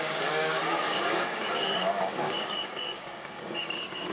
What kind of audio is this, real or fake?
fake